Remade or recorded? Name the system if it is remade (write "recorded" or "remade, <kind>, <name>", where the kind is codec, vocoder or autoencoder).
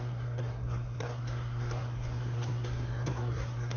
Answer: remade, codec, SNAC